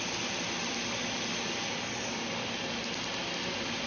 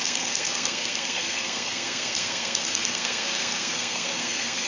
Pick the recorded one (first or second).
first